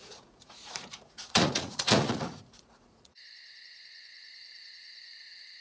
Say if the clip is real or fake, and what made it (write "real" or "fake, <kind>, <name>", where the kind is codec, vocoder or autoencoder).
fake, vocoder, Vocos